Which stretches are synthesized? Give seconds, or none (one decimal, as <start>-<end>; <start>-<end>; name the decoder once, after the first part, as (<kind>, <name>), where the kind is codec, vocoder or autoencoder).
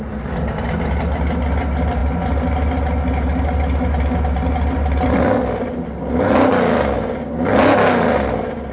none